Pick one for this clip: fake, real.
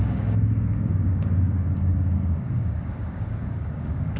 fake